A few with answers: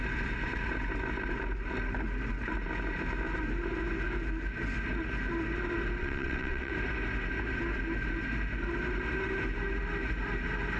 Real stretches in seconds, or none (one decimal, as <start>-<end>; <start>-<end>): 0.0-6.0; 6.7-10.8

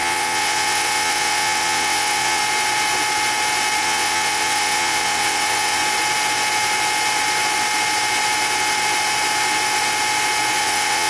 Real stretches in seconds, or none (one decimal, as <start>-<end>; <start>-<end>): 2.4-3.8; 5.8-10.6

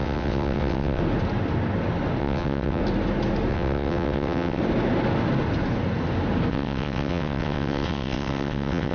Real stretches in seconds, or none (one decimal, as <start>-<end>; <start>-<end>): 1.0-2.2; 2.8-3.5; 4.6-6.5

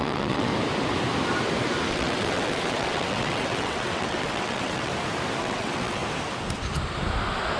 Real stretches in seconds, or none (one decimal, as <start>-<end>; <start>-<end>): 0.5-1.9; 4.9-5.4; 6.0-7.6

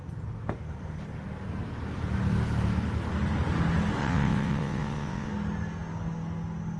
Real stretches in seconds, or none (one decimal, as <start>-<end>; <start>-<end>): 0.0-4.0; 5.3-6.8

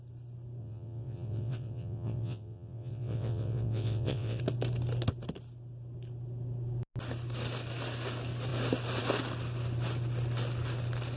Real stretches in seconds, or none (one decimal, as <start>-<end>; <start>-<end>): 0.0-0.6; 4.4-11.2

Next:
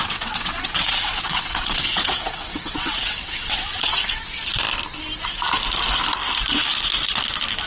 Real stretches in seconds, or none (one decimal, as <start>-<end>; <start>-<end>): 4.4-7.7